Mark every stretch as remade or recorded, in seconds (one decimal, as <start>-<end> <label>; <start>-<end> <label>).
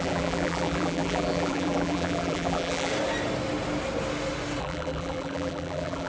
0.0-2.9 remade; 2.9-4.6 recorded; 4.6-6.1 remade